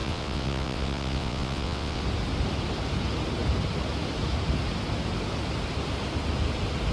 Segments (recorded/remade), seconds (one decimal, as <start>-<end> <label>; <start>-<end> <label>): 0.0-2.0 remade; 2.0-6.9 recorded